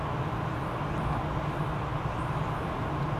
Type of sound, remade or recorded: recorded